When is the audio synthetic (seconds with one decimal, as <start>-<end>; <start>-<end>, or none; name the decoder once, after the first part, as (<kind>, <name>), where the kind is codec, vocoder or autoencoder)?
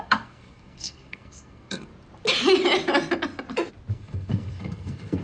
0.0-1.9 (codec, SNAC); 3.9-5.2